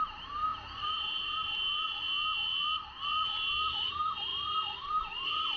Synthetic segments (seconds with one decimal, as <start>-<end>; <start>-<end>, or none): 0.0-0.5; 3.9-4.3; 4.9-5.6